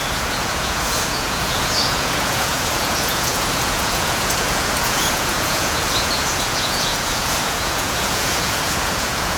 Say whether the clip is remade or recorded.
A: remade